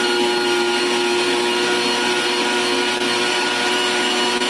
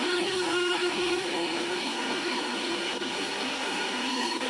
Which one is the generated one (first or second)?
second